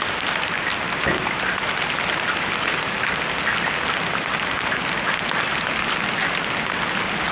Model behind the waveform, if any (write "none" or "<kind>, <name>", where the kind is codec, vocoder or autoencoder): none